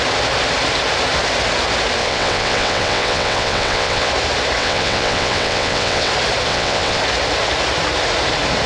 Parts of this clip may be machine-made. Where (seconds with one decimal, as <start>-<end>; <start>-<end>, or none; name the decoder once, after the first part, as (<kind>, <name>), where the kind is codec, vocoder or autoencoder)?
2.0-4.1 (vocoder, WaveNeXt); 4.6-6.1; 6.5-7.0